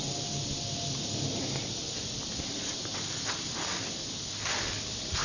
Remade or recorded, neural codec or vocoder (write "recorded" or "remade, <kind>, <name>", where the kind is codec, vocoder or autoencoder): recorded